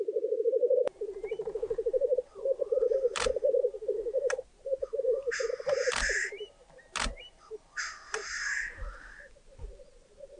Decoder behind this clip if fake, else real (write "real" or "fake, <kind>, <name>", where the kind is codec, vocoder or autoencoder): real